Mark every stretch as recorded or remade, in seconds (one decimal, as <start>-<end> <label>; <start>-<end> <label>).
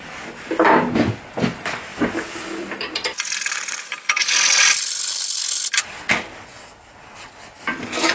0.0-8.1 recorded